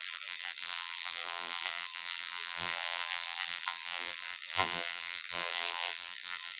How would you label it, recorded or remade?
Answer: remade